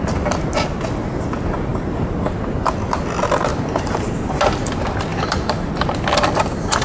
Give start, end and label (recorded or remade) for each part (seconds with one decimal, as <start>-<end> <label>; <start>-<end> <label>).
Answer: 0.0-1.7 recorded; 1.7-2.4 remade; 2.4-3.5 recorded; 3.5-4.3 remade; 4.3-5.1 recorded; 5.1-5.7 remade; 5.7-6.8 recorded